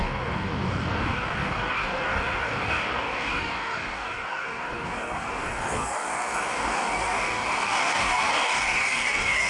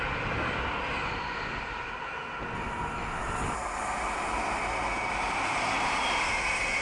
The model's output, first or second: first